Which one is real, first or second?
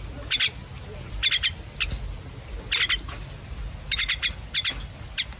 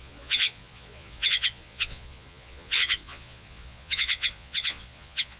first